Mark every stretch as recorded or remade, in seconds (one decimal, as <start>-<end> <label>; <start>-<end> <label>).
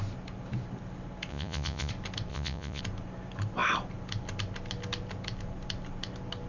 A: 0.0-1.3 recorded; 1.3-1.9 remade; 1.9-2.3 recorded; 2.3-2.8 remade; 2.8-6.5 recorded